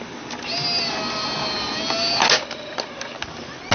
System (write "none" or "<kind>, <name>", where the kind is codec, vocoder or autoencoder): none